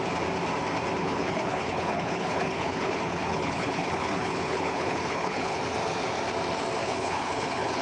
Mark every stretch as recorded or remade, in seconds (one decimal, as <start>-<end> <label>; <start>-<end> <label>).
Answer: 0.0-1.0 recorded; 1.0-5.6 remade; 5.6-6.8 recorded; 6.8-7.8 remade

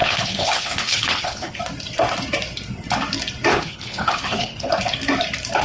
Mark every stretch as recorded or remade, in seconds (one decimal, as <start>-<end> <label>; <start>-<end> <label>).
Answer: 0.0-1.6 remade; 1.6-3.5 recorded; 3.5-4.7 remade; 4.7-5.6 recorded